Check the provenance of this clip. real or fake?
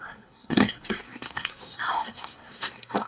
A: fake